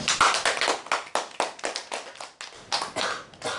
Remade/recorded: recorded